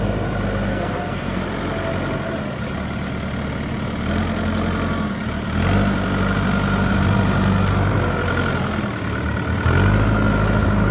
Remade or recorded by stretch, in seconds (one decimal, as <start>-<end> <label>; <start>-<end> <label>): 0.0-0.7 recorded; 0.7-1.4 remade; 1.4-10.9 recorded

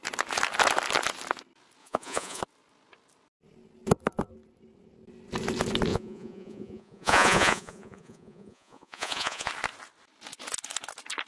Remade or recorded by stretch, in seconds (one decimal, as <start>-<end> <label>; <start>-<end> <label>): 0.0-1.8 recorded; 1.8-2.4 remade; 2.4-5.9 recorded; 5.9-9.5 remade; 9.5-11.3 recorded

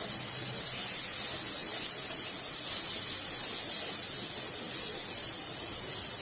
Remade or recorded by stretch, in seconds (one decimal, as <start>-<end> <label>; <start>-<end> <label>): 0.0-6.2 recorded

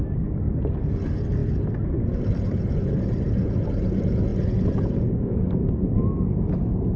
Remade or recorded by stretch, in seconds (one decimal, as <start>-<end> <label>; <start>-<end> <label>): 0.0-7.0 recorded